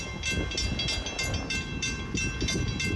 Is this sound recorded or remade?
recorded